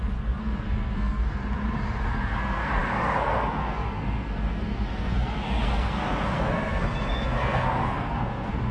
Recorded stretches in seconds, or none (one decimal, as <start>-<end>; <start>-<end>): 1.4-2.1